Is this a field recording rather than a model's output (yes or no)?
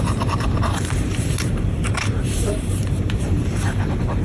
no